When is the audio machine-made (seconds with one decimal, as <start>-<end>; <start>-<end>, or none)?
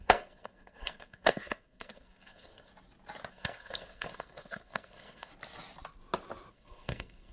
0.0-2.7; 3.3-5.3; 6.5-7.3